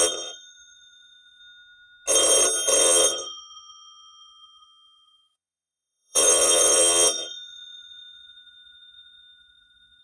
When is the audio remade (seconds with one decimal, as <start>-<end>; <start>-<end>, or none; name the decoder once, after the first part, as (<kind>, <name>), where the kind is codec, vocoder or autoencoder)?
0.0-1.4 (vocoder, Vocos); 2.8-10.0